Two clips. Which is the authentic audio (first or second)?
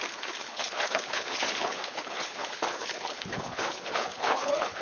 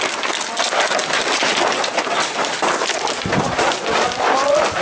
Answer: second